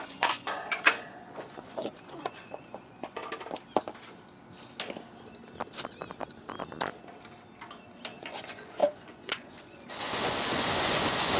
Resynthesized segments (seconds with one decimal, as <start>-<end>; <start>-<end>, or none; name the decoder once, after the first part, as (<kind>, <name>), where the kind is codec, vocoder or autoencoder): 0.0-3.2 (vocoder, Vocos); 8.2-11.4